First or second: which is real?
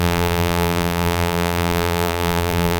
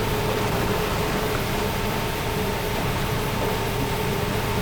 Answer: second